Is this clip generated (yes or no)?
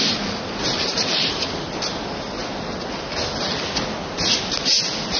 no